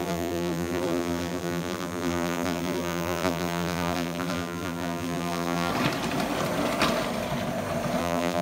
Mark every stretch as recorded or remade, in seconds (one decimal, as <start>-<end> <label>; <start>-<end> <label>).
0.0-5.7 remade; 5.7-8.0 recorded; 8.0-8.4 remade